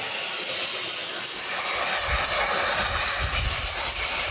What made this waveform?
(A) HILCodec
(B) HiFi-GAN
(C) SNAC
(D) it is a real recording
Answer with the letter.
D